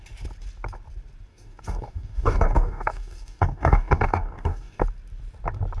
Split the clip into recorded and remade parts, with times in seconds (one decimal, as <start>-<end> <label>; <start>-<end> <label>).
0.0-1.3 recorded; 1.3-4.8 remade; 4.8-5.8 recorded